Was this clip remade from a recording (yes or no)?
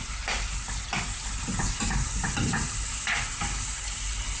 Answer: no